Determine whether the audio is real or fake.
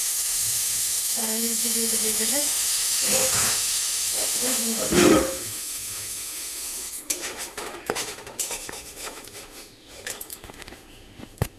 fake